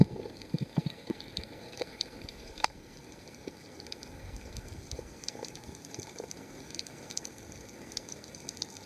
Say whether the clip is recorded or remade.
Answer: remade